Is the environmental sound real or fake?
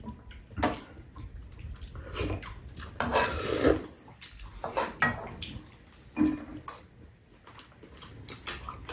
real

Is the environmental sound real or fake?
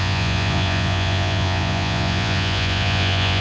fake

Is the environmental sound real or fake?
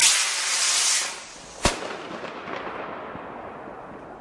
real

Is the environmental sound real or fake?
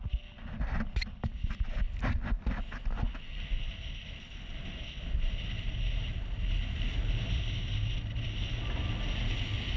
real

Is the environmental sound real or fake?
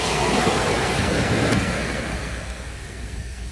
fake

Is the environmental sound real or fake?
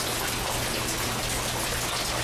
real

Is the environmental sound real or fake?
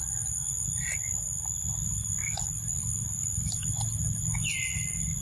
real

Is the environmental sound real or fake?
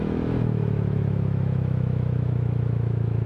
fake